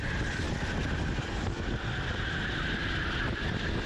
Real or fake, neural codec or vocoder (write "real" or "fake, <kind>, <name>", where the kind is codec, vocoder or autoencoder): real